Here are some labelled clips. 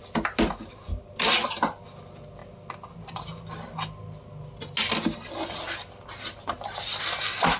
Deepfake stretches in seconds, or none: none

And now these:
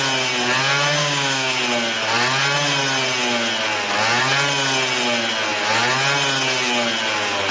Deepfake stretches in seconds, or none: 1.0-1.6 (codec, DAC)

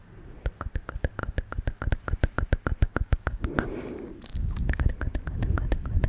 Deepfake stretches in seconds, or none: 2.8-3.6 (codec, DAC); 4.3-4.9

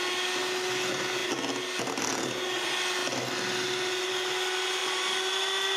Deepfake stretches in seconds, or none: none